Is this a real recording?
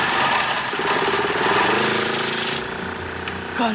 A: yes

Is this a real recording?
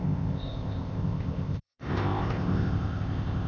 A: no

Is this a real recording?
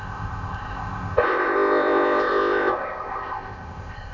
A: no